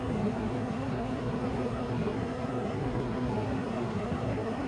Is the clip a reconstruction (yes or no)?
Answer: yes